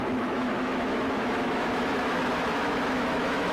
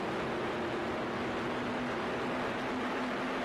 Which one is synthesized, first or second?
first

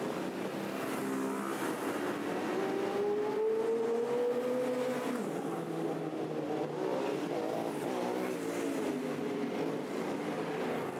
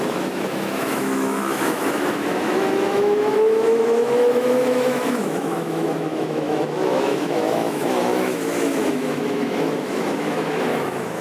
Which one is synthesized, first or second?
second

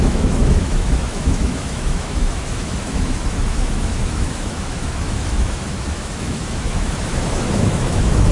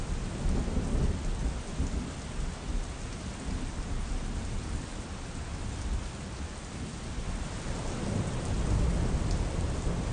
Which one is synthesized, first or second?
first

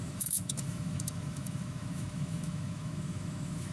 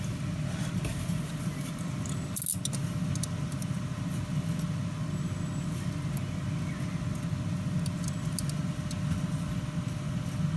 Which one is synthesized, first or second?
first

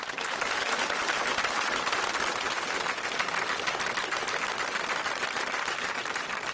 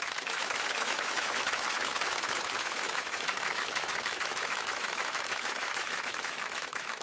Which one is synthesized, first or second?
second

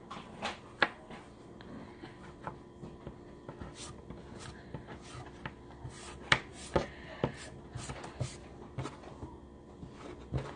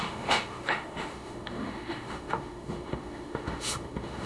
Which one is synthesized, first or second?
second